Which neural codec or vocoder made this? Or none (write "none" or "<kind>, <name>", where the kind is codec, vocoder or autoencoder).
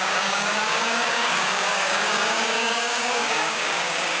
codec, DAC